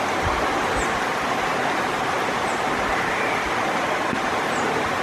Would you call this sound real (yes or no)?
yes